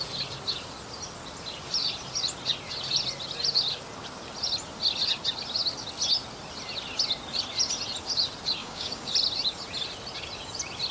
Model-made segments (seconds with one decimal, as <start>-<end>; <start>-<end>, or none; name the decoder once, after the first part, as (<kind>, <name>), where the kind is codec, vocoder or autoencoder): 8.6-9.1 (codec, DAC)